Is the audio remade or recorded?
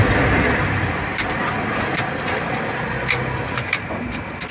recorded